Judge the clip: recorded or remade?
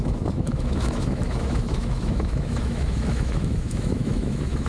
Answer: remade